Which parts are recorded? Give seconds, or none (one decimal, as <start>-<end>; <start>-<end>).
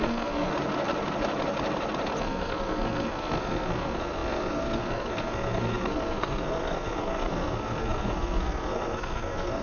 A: 0.5-2.2